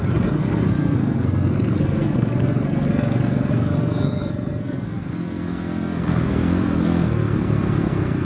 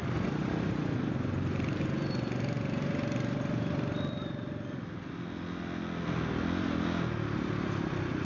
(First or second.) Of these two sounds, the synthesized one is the first